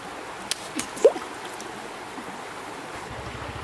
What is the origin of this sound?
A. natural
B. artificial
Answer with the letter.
A